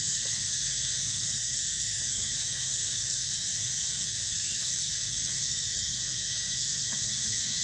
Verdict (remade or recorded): remade